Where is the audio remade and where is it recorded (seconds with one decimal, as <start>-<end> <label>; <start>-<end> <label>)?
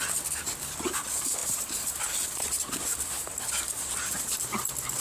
0.0-1.4 recorded; 1.4-4.4 remade; 4.4-5.0 recorded